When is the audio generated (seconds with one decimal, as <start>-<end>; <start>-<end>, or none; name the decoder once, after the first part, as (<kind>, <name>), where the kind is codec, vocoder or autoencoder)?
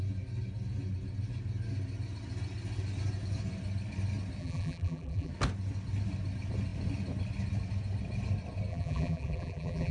4.4-5.3 (vocoder, BigVGAN v2); 8.7-9.9